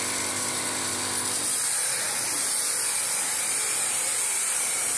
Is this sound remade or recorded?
remade